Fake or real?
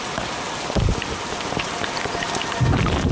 real